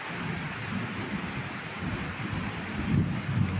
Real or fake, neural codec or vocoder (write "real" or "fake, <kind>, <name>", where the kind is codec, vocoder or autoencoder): real